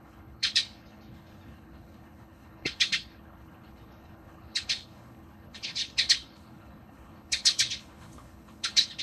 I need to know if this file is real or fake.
fake